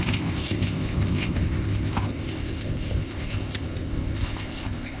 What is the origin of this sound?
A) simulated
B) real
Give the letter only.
A